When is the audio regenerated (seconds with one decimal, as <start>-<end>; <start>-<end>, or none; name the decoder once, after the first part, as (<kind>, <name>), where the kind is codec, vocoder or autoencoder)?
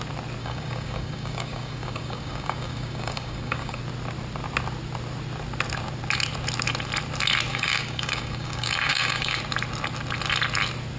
0.4-3.8 (codec, DAC); 7.5-9.4